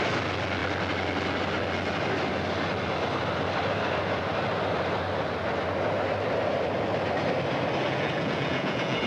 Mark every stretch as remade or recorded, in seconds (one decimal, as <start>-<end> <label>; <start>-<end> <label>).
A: 0.0-7.9 recorded; 7.9-9.1 remade